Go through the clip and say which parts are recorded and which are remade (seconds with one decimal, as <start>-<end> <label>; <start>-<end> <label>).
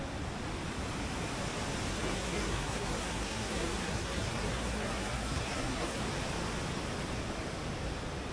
0.0-1.9 recorded; 1.9-6.0 remade; 6.0-8.3 recorded